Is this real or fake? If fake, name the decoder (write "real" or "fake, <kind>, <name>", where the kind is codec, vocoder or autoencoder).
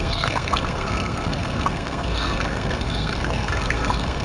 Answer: fake, codec, SNAC